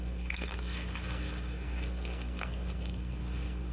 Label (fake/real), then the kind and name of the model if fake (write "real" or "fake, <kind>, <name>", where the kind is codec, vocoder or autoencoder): fake, codec, SNAC